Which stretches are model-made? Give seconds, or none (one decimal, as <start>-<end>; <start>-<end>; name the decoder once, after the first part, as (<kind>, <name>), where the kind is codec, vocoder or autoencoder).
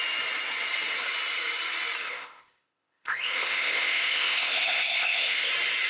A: 2.0-5.5 (codec, ZipCodec)